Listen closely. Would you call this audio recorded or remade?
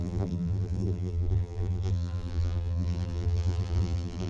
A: remade